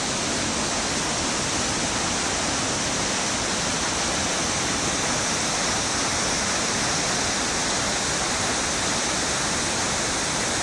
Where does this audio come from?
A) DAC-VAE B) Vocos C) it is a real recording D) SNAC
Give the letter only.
C